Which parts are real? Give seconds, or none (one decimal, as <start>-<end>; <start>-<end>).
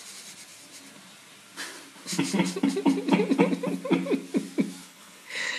0.0-4.8